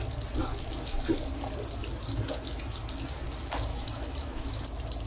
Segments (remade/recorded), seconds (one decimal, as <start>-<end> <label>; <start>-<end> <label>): 0.0-3.7 recorded; 3.7-4.6 remade; 4.6-5.1 recorded